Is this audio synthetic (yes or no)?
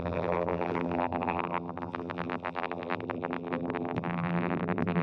yes